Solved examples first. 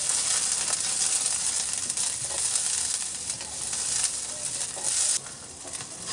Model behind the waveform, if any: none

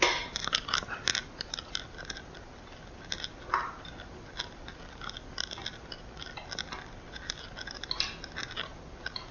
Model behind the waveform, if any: none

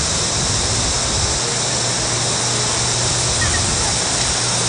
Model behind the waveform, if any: none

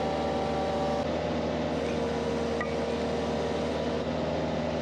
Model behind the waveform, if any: none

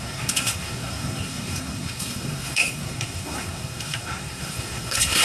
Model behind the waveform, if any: codec, SNAC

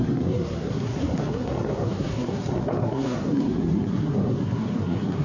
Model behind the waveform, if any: codec, SNAC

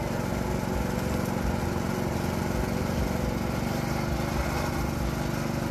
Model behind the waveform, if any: none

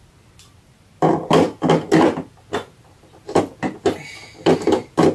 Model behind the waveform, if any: none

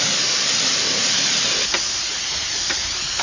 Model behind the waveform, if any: none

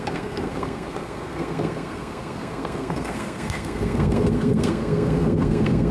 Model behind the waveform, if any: codec, SNAC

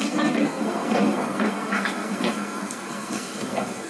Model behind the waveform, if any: codec, SNAC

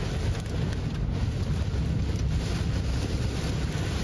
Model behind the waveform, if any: none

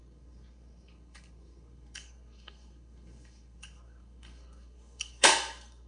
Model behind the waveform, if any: codec, SNAC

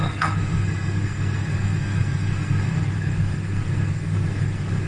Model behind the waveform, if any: codec, SNAC